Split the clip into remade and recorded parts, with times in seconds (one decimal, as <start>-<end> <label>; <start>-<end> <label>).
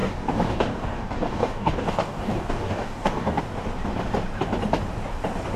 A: 0.0-3.4 remade; 3.4-5.6 recorded